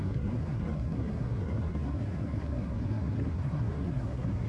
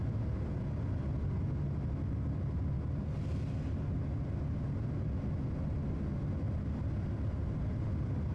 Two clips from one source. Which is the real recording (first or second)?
second